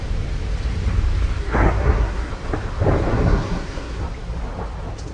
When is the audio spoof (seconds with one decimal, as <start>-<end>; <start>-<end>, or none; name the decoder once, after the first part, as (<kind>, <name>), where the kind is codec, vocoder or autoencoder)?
1.4-2.3 (codec, SNAC); 3.1-4.0